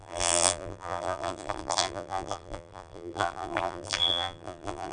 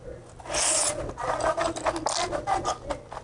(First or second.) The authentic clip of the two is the second